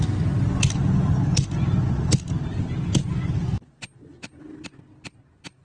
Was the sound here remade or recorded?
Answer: recorded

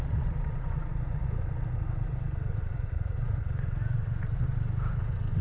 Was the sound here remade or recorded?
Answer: remade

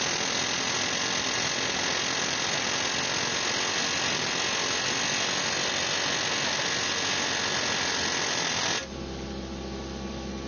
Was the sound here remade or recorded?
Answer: recorded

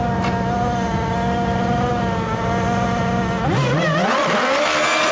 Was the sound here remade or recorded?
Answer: recorded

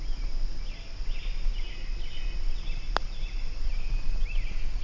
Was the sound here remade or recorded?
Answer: recorded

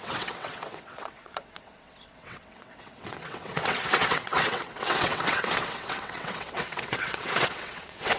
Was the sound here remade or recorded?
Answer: remade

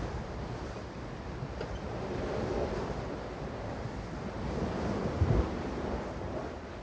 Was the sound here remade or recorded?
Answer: recorded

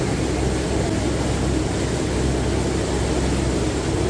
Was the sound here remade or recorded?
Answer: recorded